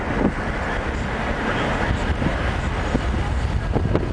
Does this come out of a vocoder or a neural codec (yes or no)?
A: no